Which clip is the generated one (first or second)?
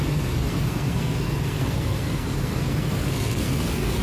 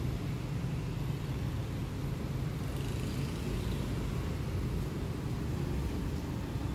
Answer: first